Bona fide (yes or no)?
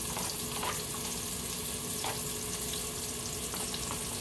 yes